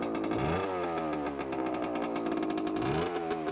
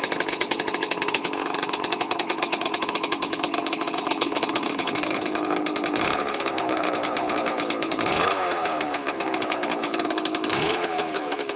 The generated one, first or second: second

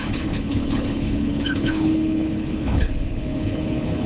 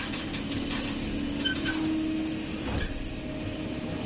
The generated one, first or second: first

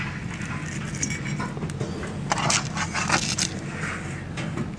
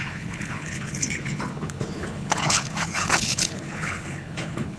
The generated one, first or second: second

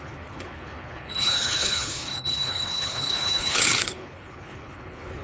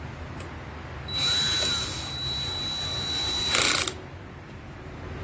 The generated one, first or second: first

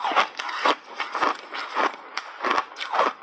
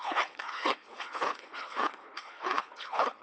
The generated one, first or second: second